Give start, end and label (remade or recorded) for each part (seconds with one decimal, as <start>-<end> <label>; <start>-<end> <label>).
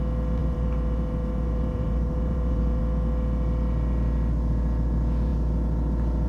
0.0-0.4 recorded; 0.4-2.8 remade; 2.8-6.3 recorded